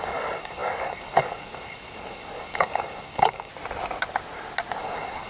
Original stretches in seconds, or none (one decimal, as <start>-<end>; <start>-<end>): 3.5-4.8